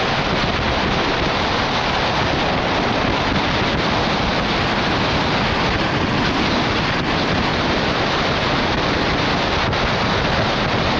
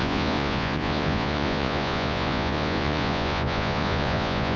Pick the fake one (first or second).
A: second